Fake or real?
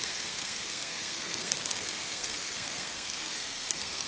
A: fake